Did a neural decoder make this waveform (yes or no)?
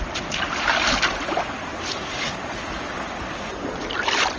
no